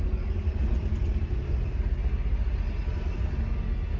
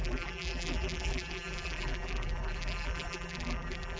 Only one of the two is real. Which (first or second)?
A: first